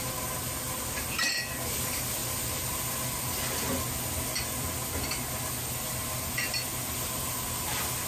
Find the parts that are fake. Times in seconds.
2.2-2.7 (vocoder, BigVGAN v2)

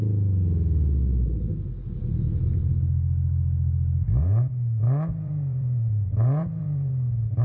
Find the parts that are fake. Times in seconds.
5.1-6.9 (vocoder, Vocos)